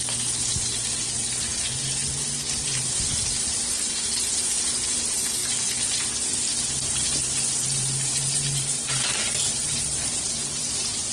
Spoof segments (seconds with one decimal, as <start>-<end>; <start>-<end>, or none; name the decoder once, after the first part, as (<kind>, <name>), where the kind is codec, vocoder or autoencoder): 0.0-1.5 (vocoder, BigVGAN v2); 3.6-5.4; 6.5-11.1